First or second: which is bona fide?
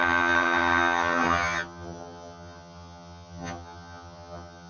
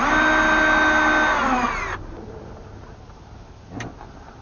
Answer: second